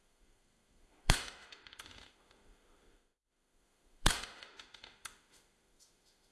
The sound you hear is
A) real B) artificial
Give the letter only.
B